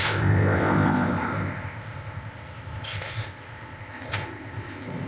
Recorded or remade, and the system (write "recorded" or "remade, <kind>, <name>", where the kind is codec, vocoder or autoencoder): remade, codec, ZipCodec